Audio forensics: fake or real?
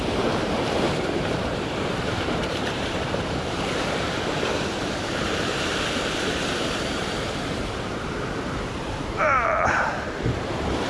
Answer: fake